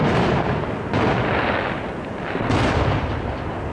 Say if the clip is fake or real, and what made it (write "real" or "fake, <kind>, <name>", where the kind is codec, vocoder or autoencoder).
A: real